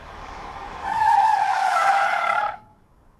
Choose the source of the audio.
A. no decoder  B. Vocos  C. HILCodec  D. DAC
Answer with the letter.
D